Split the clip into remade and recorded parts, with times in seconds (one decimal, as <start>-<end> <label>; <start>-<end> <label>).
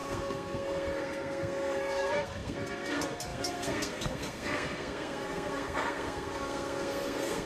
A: 0.0-7.5 remade